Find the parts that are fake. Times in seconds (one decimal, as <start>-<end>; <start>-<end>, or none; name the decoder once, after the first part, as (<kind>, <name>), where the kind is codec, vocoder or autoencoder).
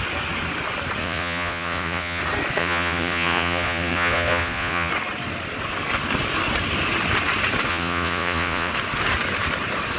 1.0-2.2 (vocoder, Vocos); 2.6-4.9; 7.7-8.7